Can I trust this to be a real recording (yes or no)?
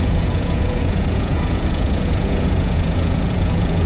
no